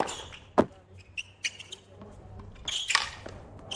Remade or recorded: recorded